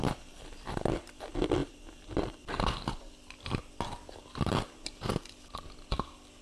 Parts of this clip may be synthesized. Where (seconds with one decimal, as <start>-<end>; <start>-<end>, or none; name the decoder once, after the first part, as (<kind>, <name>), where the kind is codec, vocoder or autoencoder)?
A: 1.6-3.0 (vocoder, BigVGAN v2)